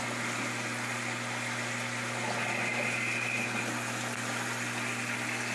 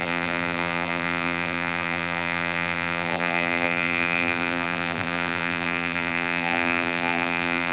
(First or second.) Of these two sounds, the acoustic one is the first